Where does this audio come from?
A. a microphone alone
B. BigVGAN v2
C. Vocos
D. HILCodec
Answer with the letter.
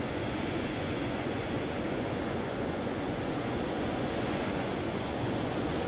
C